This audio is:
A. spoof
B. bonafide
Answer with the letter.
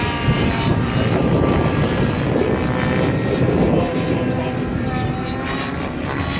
B